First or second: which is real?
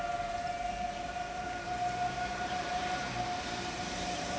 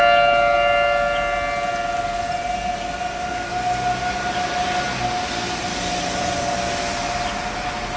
second